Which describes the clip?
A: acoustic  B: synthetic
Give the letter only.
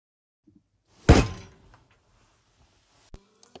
A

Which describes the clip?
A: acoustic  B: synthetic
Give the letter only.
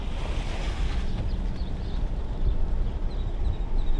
A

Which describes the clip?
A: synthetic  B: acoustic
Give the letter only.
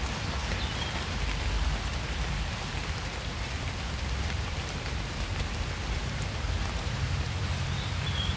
A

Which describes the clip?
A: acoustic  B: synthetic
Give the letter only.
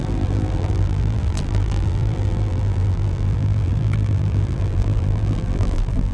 B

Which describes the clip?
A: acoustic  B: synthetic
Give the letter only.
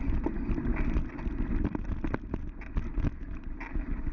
A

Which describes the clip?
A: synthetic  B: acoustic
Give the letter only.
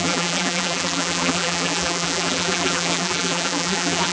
A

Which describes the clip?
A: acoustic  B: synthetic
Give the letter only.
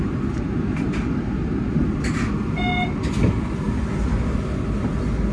A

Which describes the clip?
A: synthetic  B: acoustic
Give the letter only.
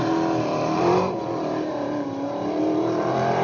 A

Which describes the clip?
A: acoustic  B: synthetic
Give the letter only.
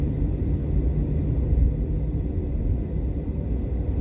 A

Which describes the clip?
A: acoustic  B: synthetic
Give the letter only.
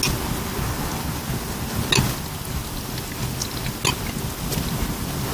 A